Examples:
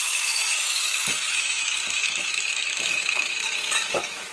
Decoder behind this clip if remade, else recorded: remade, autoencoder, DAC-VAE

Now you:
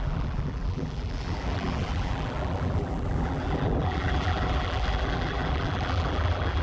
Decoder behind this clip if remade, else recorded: remade, vocoder, BigVGAN v2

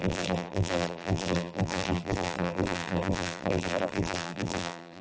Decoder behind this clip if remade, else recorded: remade, vocoder, BigVGAN v2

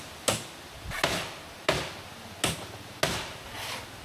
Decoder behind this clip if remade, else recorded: recorded